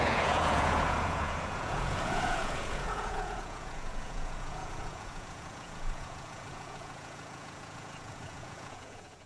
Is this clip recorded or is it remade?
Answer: remade